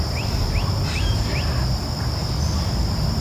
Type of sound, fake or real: real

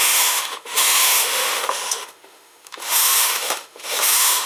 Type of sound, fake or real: fake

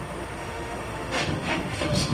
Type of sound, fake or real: fake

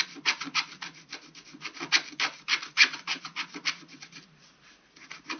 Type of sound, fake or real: real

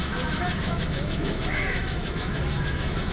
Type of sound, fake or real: fake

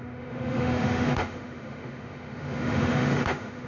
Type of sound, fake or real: fake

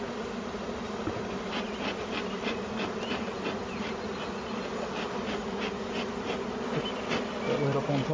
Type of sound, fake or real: real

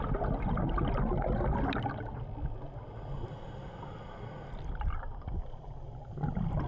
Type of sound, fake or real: real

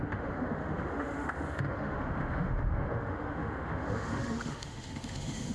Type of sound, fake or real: fake